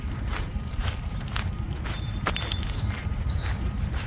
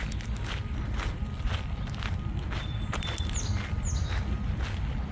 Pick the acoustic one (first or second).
second